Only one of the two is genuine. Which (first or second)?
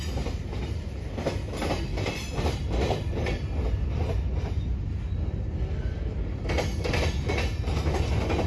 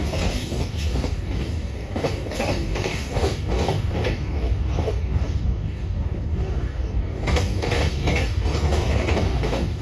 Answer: first